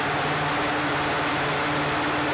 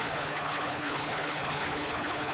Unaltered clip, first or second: first